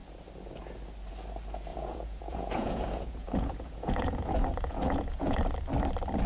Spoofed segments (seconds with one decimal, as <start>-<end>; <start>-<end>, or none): 1.7-5.5